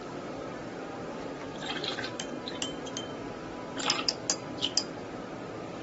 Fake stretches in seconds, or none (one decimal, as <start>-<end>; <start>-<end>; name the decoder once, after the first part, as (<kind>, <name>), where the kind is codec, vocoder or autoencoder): none